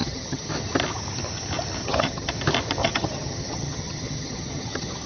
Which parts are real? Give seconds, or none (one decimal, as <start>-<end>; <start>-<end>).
0.5-1.8; 2.3-2.8